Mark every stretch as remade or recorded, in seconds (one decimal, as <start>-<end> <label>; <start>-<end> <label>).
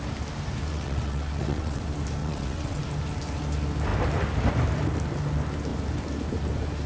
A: 0.0-0.7 recorded; 0.7-1.8 remade; 1.8-2.2 recorded; 2.2-2.8 remade; 2.8-6.9 recorded